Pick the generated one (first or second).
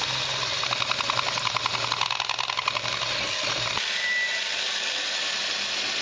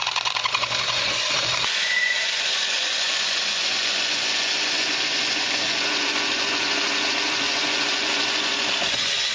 second